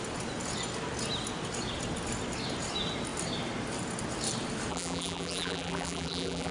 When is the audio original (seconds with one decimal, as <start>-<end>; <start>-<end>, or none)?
0.0-4.7